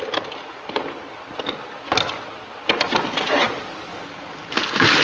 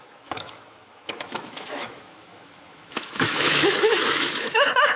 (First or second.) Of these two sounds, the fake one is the second